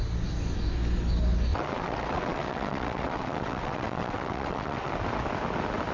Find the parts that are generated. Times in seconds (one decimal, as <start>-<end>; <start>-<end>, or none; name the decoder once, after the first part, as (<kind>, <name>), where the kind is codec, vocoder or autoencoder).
1.5-4.9 (vocoder, WaveNeXt)